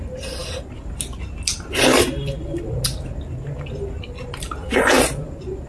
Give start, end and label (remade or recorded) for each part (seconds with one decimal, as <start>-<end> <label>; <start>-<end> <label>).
0.0-5.7 recorded

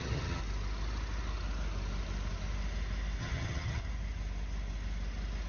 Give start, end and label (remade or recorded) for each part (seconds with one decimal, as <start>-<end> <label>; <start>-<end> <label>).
0.0-0.4 remade; 0.4-3.2 recorded; 3.2-3.8 remade; 3.8-5.5 recorded